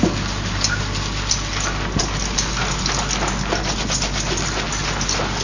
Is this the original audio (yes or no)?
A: yes